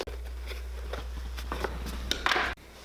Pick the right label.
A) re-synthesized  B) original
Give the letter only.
B